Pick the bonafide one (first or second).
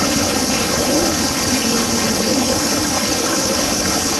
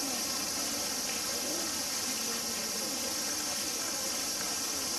second